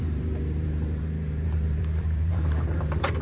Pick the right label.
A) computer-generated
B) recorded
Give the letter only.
A